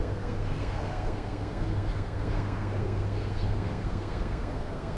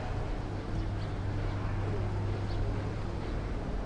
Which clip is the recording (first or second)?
second